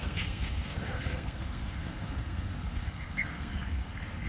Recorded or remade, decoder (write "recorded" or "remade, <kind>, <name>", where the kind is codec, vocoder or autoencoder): remade, codec, SNAC